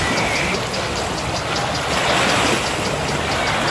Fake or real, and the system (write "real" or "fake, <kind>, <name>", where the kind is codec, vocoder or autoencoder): real